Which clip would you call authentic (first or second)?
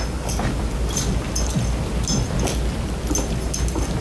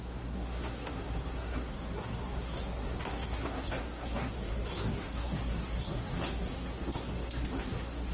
first